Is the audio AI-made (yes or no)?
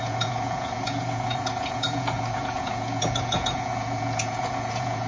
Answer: yes